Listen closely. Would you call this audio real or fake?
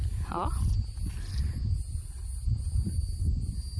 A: real